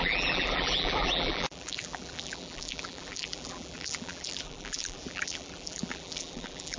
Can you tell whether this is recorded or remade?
remade